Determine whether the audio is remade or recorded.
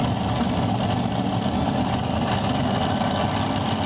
recorded